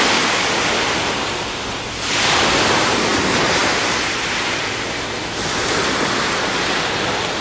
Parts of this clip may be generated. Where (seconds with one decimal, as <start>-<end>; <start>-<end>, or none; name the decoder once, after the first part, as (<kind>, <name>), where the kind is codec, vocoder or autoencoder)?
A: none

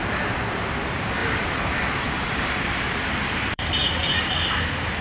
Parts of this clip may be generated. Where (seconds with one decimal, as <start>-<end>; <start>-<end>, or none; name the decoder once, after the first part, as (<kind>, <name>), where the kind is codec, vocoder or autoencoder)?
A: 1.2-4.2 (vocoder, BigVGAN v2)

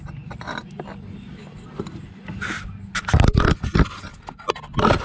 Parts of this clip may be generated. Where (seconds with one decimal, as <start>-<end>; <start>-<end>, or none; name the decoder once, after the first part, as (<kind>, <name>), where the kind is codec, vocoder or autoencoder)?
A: none

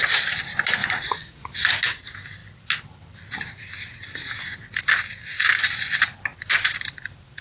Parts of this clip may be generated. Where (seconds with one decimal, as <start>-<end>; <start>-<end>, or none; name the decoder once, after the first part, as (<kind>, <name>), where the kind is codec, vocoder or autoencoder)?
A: 0.8-1.7 (vocoder, Vocos)

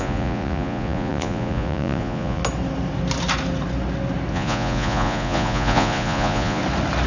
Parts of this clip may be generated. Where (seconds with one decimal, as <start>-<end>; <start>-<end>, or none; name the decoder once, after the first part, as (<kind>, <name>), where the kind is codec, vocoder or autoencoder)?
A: 0.0-2.4 (vocoder, Vocos); 4.3-6.6

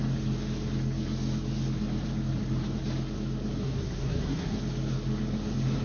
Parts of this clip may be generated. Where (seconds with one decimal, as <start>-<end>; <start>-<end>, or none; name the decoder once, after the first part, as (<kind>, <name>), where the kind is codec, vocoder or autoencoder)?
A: 3.6-4.6 (codec, SNAC)

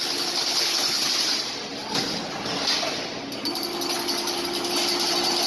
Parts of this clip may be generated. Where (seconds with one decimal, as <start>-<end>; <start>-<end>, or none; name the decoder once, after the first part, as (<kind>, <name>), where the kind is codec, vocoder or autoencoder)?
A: 0.5-1.1 (codec, HILCodec)